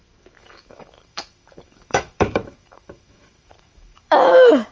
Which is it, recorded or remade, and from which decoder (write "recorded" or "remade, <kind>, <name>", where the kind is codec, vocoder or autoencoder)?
remade, autoencoder, DAC-VAE